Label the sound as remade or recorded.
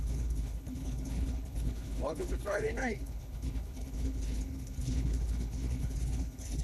remade